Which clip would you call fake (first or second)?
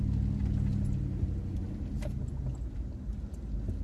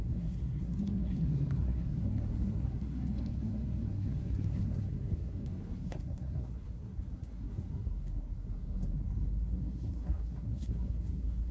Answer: second